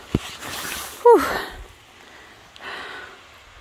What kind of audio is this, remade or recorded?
recorded